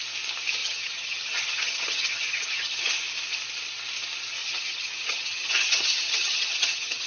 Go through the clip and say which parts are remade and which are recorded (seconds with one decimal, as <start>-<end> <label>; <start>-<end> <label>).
0.0-0.6 recorded; 0.6-2.9 remade; 2.9-4.4 recorded; 4.4-7.1 remade